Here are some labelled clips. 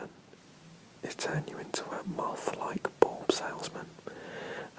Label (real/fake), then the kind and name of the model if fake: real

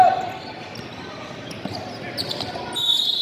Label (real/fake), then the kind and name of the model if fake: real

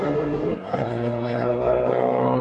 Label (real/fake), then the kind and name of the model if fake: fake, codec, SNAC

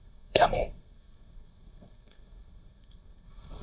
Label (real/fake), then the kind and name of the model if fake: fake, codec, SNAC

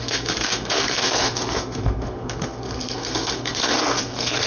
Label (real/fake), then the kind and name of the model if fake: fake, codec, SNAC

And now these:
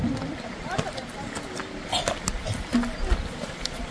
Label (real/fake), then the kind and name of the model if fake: real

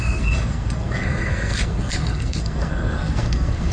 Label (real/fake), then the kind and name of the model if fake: fake, codec, SNAC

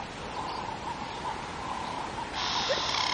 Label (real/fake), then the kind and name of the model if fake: real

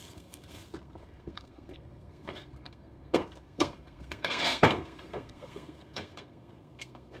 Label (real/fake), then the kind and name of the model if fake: fake, codec, SNAC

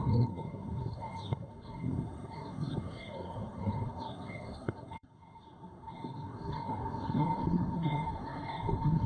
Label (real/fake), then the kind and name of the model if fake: fake, codec, SNAC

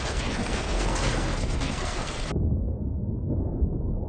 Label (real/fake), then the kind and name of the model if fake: fake, codec, SNAC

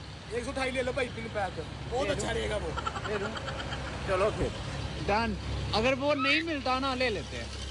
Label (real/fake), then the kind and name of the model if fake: real